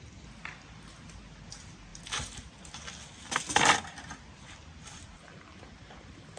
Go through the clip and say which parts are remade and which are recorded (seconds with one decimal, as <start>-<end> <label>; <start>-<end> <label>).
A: 0.0-6.4 recorded